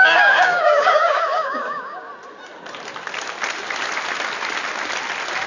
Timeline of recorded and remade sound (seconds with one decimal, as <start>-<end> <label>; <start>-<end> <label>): 0.0-2.1 remade; 2.1-5.5 recorded